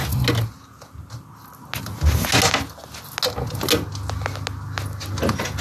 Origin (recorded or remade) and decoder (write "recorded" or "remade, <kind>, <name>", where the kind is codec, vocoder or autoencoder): recorded